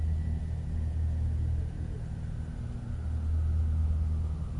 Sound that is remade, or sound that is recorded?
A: recorded